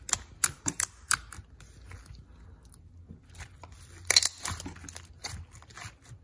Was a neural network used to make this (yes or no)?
no